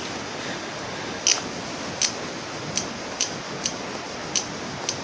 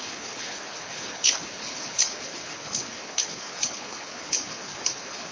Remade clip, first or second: second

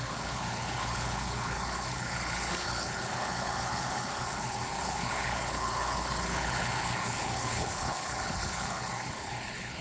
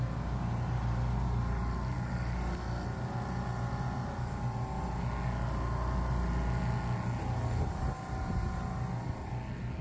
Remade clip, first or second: first